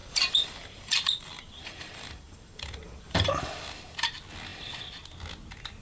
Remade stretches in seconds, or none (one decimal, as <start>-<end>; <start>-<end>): 0.0-3.5